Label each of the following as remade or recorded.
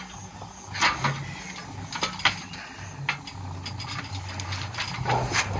recorded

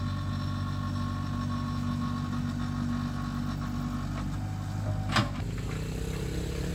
recorded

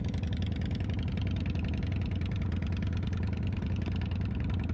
recorded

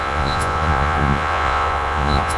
remade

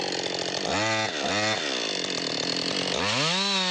recorded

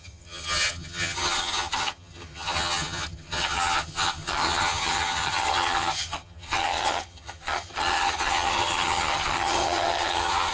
remade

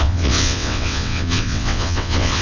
remade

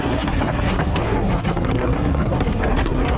remade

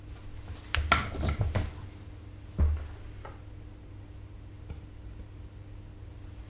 recorded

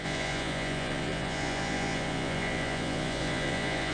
remade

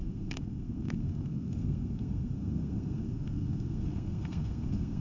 remade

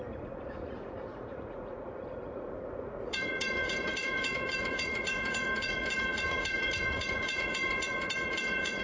remade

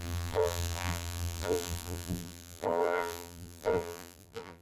remade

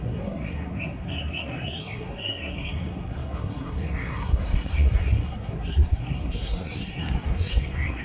remade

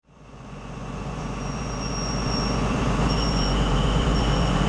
remade